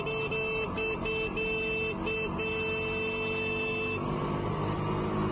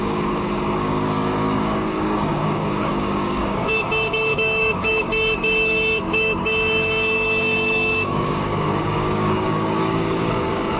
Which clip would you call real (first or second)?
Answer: first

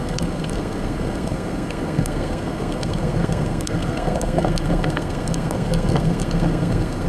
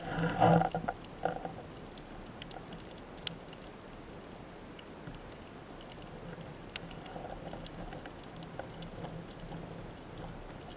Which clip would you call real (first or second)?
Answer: second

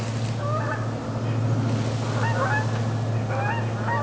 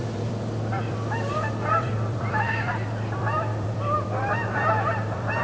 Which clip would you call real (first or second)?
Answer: first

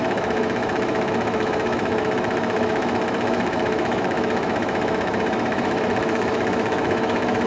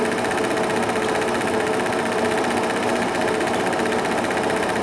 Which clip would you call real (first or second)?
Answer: second